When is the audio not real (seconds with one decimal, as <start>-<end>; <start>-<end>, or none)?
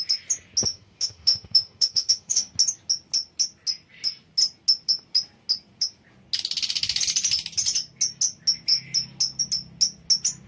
0.7-2.5